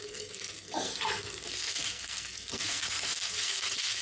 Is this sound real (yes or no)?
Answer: no